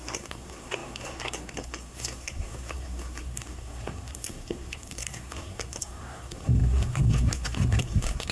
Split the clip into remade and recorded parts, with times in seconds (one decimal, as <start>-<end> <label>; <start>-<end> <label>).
0.0-8.3 remade